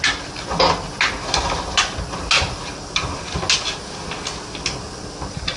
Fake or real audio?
real